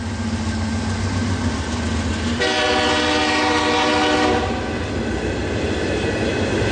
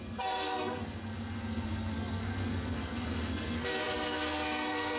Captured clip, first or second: first